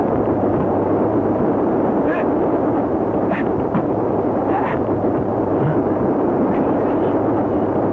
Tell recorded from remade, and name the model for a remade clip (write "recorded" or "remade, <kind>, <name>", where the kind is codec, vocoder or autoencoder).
remade, vocoder, BigVGAN v2